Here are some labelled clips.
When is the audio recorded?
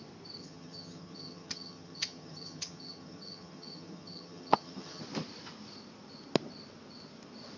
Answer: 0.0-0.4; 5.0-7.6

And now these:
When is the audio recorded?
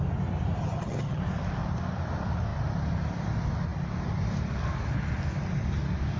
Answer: 0.0-0.6; 1.2-6.2